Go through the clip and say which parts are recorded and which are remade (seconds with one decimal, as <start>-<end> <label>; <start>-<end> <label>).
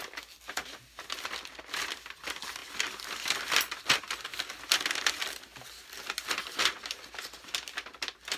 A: 0.0-8.4 recorded